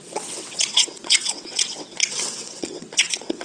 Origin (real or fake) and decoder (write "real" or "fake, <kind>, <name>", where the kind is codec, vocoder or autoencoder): fake, vocoder, WaveNeXt